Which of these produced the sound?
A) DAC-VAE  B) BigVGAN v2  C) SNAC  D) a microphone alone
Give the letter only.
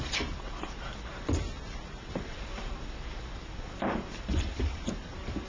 B